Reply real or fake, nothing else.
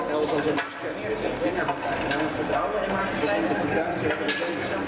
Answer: real